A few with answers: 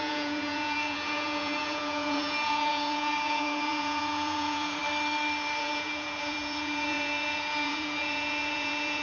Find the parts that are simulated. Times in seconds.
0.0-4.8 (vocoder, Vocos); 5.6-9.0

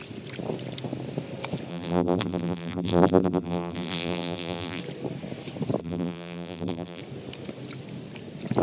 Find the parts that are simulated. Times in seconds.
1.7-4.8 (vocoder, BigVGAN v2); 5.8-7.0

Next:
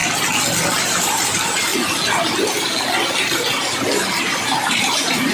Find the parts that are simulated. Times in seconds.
0.8-1.7 (vocoder, BigVGAN v2); 4.2-5.3

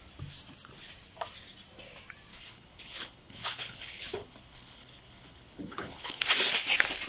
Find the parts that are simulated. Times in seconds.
2.3-6.2 (codec, HILCodec)